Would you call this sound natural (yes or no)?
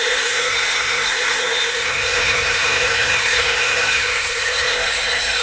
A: no